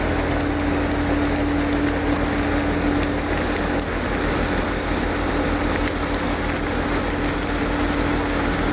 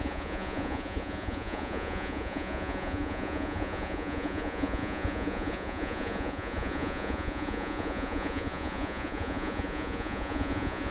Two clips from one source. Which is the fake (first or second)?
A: second